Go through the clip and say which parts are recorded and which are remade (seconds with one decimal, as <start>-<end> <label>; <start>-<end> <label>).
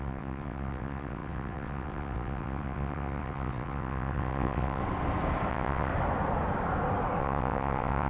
0.0-4.8 remade; 4.8-5.5 recorded; 5.5-5.9 remade; 5.9-7.2 recorded; 7.2-8.1 remade